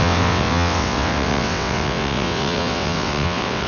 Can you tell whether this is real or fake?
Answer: fake